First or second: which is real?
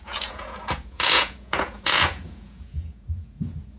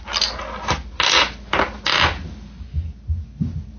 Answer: second